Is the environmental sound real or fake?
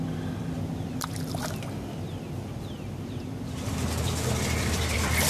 fake